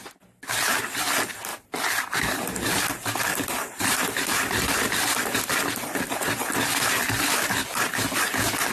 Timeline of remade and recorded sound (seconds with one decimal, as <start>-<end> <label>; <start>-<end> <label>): 0.0-3.3 recorded; 3.3-6.0 remade; 6.0-8.7 recorded